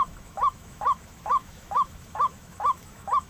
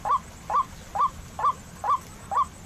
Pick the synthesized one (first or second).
first